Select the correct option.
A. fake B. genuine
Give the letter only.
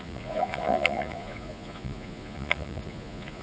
A